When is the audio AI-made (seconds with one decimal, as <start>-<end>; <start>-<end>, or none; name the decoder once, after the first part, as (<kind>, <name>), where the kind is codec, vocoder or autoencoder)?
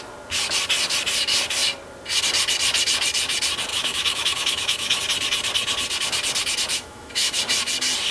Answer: 3.7-5.0 (autoencoder, DAC-VAE); 6.7-7.4